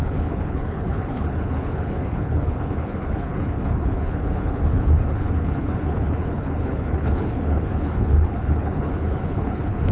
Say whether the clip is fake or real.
fake